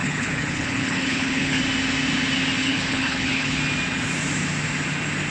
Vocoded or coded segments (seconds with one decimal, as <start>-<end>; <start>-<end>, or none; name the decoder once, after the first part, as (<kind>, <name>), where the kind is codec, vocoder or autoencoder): 0.0-1.6 (codec, HILCodec); 2.6-3.6